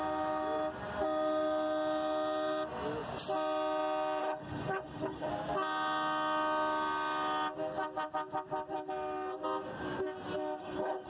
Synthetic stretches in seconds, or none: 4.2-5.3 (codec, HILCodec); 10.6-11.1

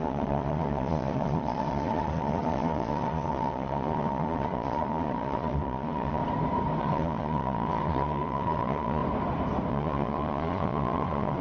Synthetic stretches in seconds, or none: 0.0-6.2 (vocoder, Vocos); 6.8-9.0; 9.7-11.4

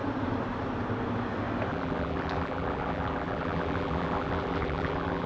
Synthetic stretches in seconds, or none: 1.7-5.3 (vocoder, BigVGAN v2)

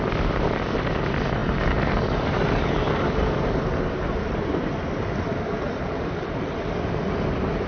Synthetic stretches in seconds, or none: none